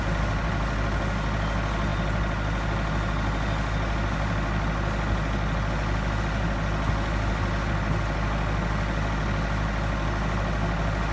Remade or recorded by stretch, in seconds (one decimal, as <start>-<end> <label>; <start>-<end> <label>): 0.0-11.1 recorded